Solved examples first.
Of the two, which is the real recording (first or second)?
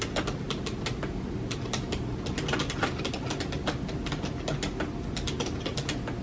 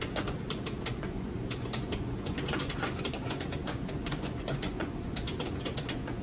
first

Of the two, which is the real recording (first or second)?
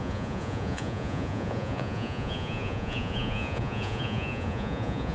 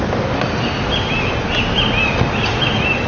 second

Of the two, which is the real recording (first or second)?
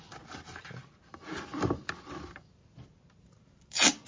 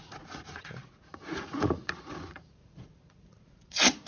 first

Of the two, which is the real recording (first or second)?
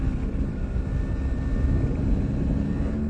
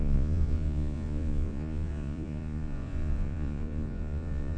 first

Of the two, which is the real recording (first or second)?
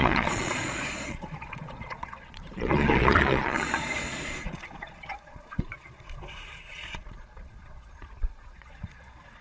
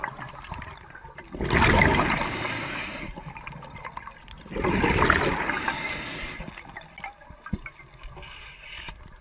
second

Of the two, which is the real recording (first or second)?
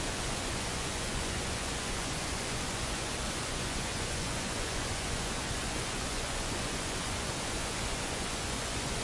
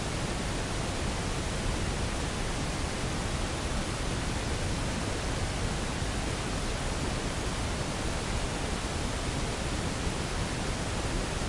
second